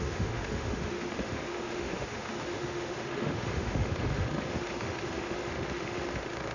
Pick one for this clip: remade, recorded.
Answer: remade